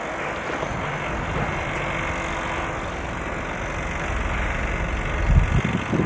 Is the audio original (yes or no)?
yes